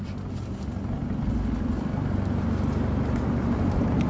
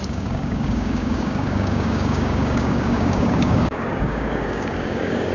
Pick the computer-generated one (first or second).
second